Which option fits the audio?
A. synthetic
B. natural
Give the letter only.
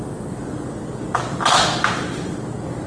A